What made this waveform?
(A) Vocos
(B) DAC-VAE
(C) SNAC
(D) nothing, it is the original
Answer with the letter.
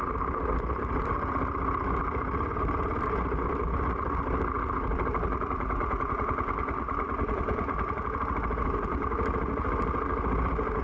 D